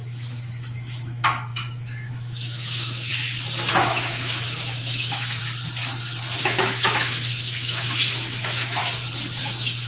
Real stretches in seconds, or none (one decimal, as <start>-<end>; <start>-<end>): 3.1-3.7; 5.4-6.4; 8.8-9.4